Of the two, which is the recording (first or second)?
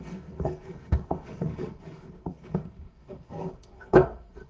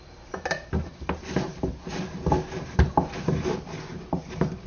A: second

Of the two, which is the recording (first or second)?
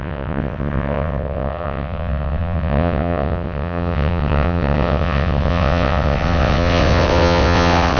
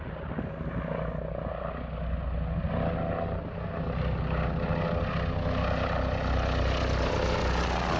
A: second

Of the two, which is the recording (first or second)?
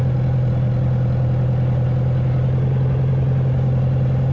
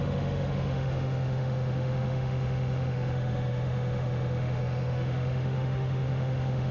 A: first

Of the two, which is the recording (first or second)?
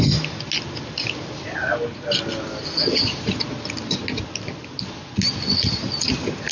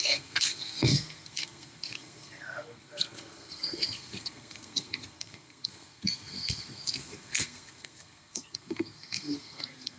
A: first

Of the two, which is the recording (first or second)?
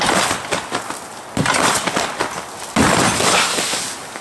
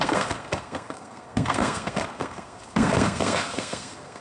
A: first